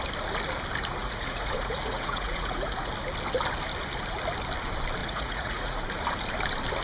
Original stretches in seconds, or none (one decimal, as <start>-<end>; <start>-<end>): 0.0-1.0; 2.9-5.0; 5.9-6.8